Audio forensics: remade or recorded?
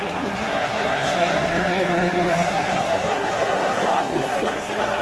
remade